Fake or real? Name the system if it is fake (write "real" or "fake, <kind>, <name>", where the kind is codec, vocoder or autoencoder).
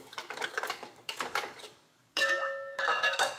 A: fake, codec, DAC